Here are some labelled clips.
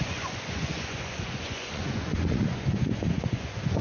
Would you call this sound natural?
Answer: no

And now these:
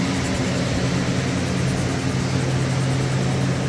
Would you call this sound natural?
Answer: yes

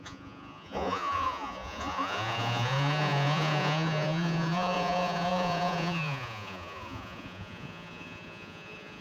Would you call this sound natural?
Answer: no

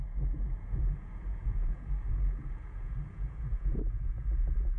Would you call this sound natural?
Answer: no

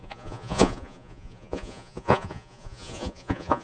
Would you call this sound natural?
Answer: no